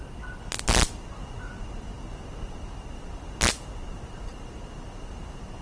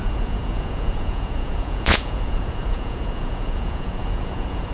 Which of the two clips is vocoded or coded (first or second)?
second